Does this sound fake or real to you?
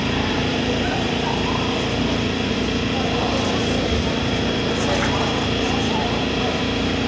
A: fake